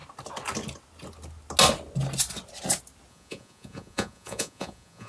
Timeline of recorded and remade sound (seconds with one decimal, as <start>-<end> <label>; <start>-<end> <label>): 0.0-3.1 recorded; 3.1-5.1 remade